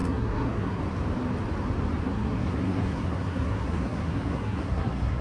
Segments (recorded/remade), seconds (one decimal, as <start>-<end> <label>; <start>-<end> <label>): 0.0-0.8 remade; 0.8-2.0 recorded; 2.0-5.2 remade